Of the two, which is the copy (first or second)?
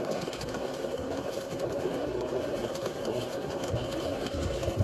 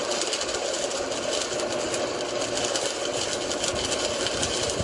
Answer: first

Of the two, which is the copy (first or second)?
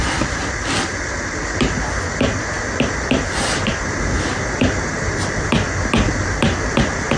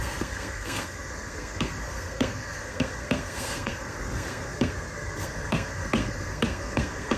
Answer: second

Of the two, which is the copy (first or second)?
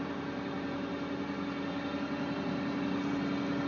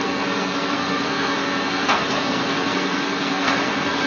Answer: second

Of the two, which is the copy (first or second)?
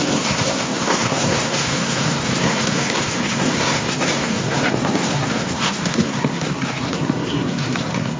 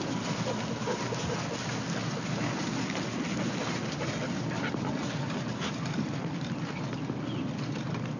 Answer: first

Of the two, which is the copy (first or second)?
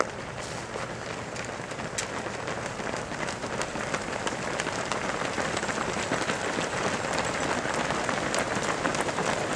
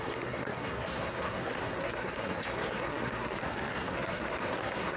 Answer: second